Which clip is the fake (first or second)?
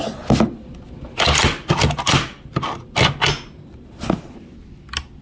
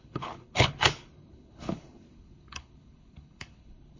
second